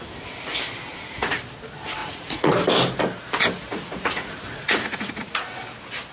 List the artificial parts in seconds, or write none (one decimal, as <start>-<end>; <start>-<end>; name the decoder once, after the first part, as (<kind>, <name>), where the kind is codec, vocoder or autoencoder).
0.9-1.4 (vocoder, Vocos); 2.0-2.5; 3.7-5.6